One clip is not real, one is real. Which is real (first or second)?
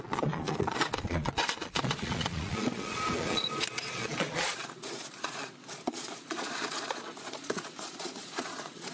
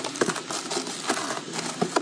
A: second